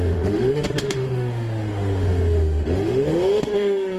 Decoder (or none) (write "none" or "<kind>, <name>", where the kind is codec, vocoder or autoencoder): autoencoder, DAC-VAE